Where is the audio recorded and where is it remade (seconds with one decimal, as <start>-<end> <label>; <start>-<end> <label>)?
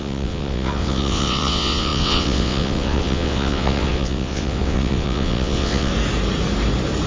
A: 0.0-5.9 remade; 5.9-7.1 recorded